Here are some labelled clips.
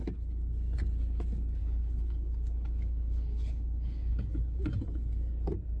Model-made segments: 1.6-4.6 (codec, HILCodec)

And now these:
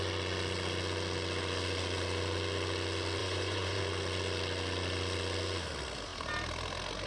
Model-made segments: 3.2-3.8 (vocoder, Vocos)